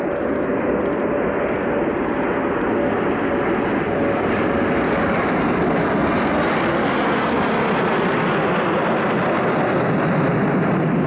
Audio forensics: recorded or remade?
recorded